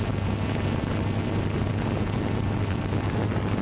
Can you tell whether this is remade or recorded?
recorded